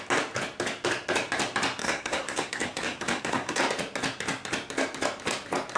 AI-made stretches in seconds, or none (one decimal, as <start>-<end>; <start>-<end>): 1.8-3.6